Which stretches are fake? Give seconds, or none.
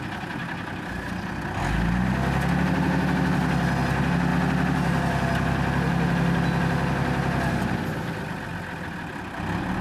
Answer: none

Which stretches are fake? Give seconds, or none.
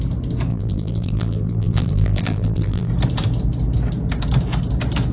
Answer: 0.5-2.9 (vocoder, BigVGAN v2)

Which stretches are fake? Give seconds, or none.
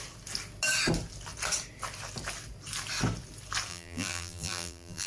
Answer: 3.7-5.1 (vocoder, BigVGAN v2)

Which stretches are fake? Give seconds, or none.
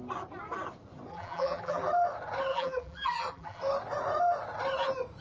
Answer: 1.1-1.9 (vocoder, BigVGAN v2); 2.5-3.6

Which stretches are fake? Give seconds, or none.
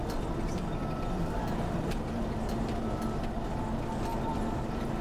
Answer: 4.1-4.6 (vocoder, BigVGAN v2)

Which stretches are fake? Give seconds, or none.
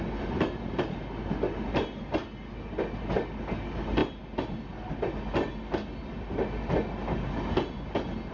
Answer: none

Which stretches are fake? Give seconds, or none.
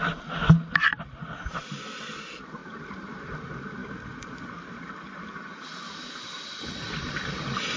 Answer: 2.6-3.3 (vocoder, BigVGAN v2); 3.8-4.3